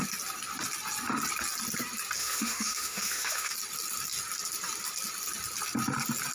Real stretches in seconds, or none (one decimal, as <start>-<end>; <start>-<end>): 0.0-2.2; 3.5-6.3